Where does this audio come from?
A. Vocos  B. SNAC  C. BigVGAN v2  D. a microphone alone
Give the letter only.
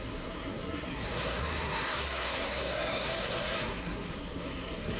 B